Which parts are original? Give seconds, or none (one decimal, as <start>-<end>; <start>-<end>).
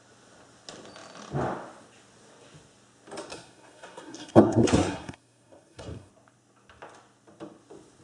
0.0-3.3; 6.1-8.0